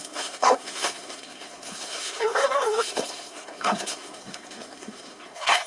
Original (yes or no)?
no